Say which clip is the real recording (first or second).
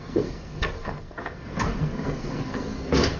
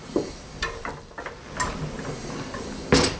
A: second